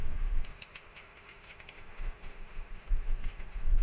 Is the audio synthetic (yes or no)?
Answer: yes